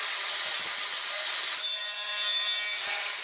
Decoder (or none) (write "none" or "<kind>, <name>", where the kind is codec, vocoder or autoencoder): none